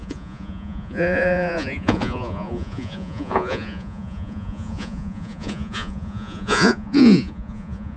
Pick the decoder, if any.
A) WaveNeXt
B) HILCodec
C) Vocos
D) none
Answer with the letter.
C